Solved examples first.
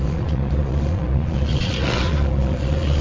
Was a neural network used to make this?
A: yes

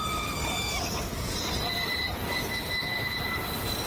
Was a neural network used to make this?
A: no